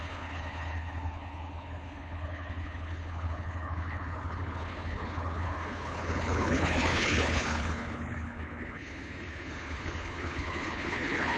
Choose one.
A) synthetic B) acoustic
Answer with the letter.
A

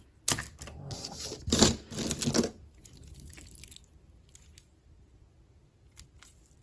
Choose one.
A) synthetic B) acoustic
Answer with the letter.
B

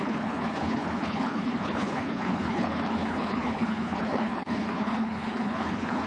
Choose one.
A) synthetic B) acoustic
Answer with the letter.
A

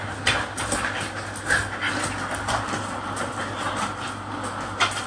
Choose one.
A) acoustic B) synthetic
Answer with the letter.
A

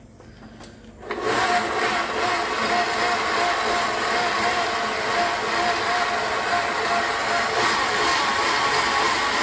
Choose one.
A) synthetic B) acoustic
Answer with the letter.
B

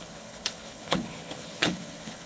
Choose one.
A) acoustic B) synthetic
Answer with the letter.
B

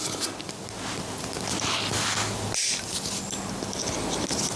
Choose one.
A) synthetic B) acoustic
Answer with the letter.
B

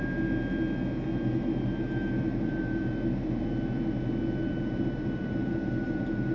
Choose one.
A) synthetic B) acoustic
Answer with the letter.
B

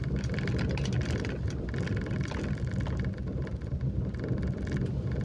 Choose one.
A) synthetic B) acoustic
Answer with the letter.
B